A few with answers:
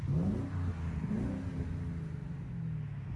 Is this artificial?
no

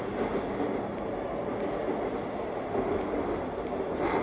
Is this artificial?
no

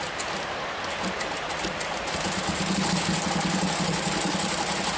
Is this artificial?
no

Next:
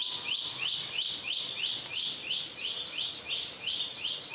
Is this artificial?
no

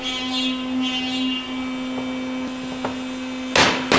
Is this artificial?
no